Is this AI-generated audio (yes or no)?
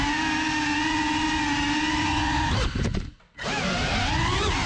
no